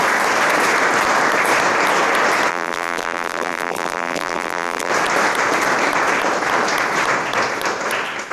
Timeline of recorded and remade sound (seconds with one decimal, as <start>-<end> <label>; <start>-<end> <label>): 0.0-2.5 recorded; 2.5-4.9 remade; 4.9-8.3 recorded